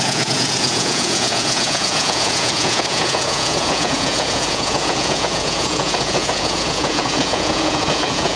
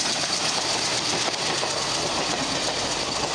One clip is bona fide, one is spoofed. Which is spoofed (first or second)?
first